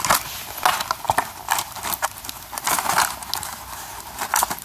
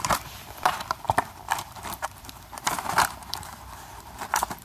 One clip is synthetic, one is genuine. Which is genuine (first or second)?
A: first